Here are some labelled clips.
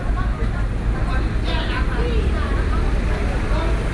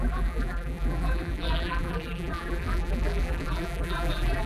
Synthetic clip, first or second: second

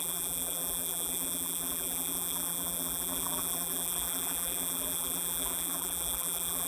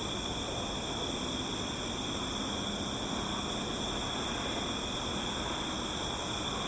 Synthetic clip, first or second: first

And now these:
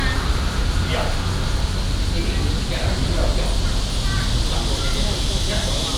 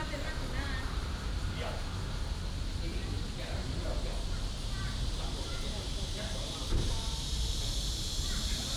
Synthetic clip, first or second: second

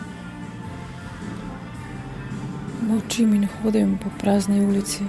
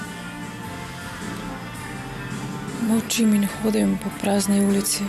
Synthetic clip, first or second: first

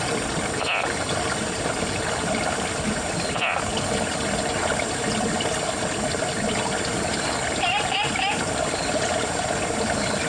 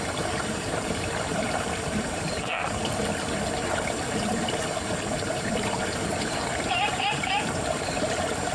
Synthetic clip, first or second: second